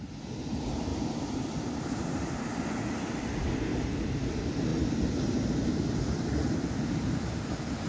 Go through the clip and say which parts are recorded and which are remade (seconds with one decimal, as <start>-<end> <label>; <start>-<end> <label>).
0.0-0.9 recorded; 0.9-2.4 remade; 2.4-3.7 recorded; 3.7-4.3 remade; 4.3-7.9 recorded